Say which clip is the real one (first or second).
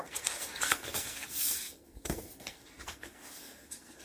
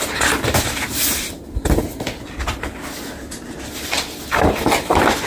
second